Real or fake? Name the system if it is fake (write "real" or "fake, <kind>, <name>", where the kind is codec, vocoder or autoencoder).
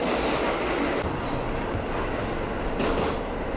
real